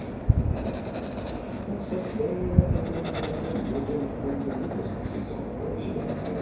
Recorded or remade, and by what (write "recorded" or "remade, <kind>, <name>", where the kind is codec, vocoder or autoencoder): recorded